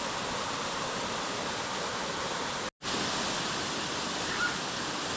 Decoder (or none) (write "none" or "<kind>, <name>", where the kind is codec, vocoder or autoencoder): none